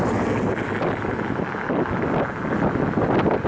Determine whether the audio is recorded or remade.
recorded